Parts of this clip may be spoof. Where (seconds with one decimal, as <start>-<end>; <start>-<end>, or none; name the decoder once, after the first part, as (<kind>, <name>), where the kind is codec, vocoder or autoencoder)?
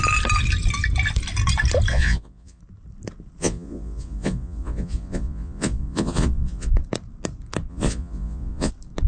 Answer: 1.9-2.6 (vocoder, Vocos); 3.4-6.7; 7.7-8.7